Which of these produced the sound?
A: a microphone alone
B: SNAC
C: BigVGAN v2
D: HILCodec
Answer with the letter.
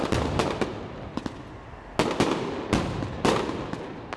A